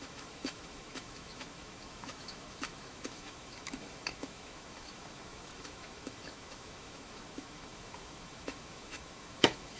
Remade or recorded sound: remade